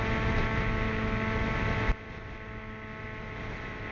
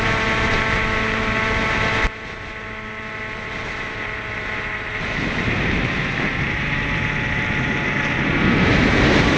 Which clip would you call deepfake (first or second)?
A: second